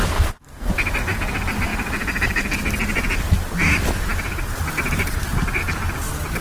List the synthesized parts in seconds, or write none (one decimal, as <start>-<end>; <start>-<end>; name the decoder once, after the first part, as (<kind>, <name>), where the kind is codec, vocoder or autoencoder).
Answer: 0.0-0.7 (codec, SNAC)